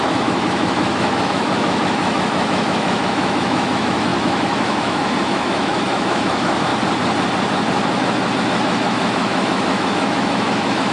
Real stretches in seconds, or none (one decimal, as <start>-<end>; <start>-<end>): 6.7-8.4